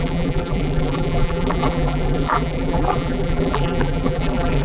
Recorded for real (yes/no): no